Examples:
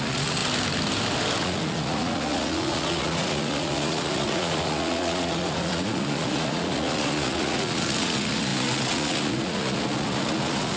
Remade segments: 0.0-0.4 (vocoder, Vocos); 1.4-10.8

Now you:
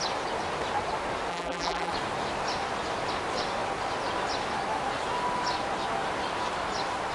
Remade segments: 1.3-1.9 (vocoder, BigVGAN v2)

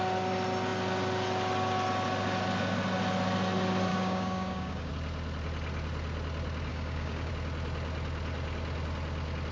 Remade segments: 3.9-4.9 (codec, DAC); 6.7-7.3

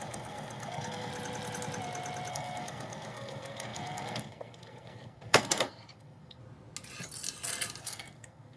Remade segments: 0.0-1.1 (codec, SNAC); 2.3-6.4; 7.8-8.6